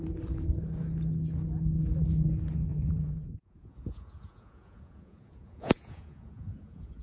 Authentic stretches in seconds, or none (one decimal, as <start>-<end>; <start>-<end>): 0.0-2.7